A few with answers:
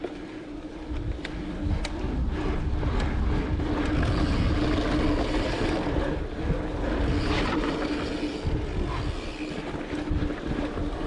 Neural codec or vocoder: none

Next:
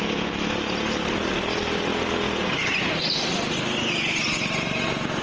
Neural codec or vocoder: none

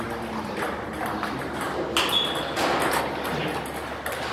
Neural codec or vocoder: none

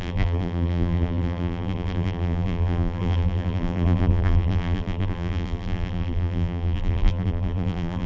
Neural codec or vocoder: vocoder, BigVGAN v2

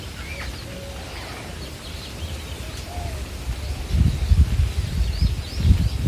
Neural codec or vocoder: none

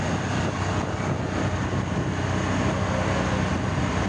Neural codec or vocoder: none